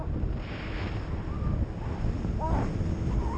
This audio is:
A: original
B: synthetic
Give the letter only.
A